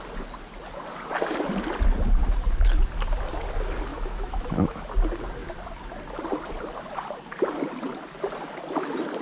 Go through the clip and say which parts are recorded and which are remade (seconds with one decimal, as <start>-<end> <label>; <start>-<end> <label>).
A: 0.0-3.9 recorded; 3.9-4.9 remade; 4.9-9.2 recorded